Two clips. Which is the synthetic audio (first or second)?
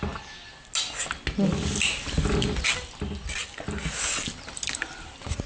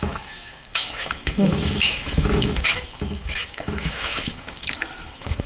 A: second